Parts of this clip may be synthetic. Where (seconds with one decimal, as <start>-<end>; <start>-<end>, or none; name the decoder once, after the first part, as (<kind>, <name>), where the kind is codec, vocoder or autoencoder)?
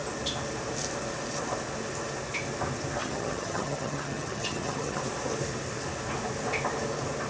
3.0-5.0 (vocoder, HiFi-GAN)